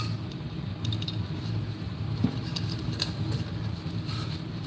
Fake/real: real